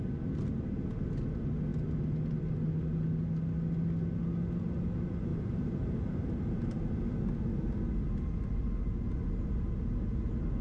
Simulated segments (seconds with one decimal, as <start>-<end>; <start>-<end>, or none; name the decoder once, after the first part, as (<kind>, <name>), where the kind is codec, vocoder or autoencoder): 5.3-6.9 (vocoder, BigVGAN v2)